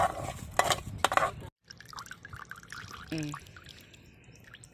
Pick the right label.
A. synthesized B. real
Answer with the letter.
B